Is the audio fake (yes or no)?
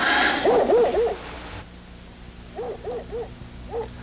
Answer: no